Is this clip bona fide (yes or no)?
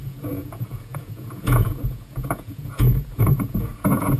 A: no